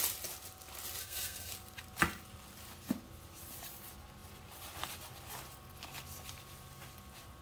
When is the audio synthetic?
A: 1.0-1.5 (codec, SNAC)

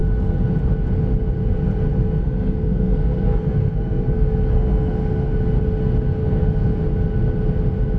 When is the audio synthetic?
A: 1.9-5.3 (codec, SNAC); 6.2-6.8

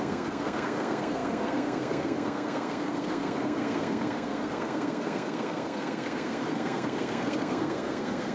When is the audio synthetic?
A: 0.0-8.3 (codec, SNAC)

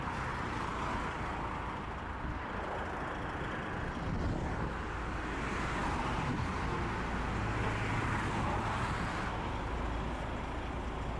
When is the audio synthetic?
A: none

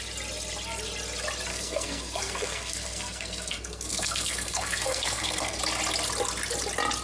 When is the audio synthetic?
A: 1.5-5.6 (codec, SNAC)

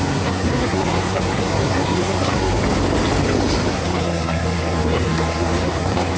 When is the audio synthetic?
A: 0.0-2.6 (codec, SNAC); 3.7-6.2

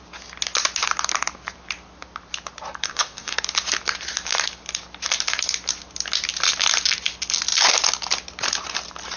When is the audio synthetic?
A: 2.8-3.4 (codec, SNAC)

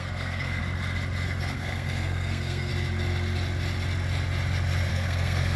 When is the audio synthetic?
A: 0.0-0.6 (codec, SNAC); 1.5-2.7; 4.9-5.6